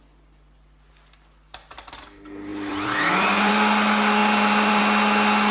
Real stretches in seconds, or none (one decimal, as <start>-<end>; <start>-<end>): 0.0-2.5; 3.5-4.2; 4.8-5.5